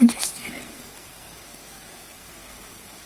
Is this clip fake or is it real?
fake